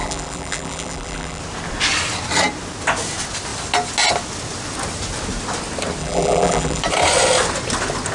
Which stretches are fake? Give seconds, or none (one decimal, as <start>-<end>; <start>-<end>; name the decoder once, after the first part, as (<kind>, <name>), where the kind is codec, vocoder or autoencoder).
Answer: 0.0-1.4 (vocoder, BigVGAN v2); 6.0-6.8